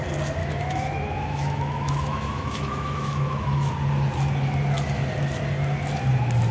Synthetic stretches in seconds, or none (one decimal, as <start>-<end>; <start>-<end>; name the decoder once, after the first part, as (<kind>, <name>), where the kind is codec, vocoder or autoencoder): 0.4-3.7 (autoencoder, DAC-VAE)